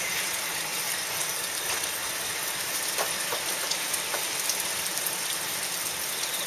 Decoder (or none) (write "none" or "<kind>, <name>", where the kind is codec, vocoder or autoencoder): none